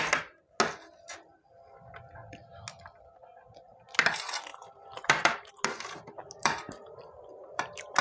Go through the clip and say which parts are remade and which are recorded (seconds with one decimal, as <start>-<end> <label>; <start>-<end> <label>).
0.0-4.5 recorded; 4.5-5.5 remade; 5.5-6.4 recorded; 6.4-8.0 remade